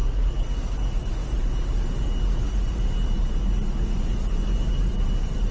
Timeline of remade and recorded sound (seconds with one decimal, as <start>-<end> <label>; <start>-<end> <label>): 0.0-5.5 recorded